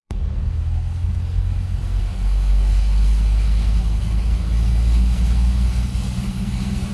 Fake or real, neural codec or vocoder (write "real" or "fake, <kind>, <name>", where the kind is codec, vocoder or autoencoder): fake, codec, SNAC